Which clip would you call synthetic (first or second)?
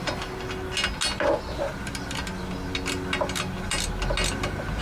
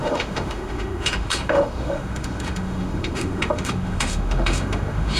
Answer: second